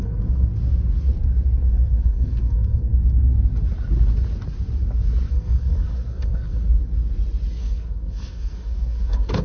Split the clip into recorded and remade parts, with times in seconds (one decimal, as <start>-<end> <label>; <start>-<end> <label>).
0.0-0.5 remade; 0.5-1.7 recorded; 1.7-2.9 remade; 2.9-5.3 recorded; 5.3-6.6 remade; 6.6-7.6 recorded; 7.6-9.4 remade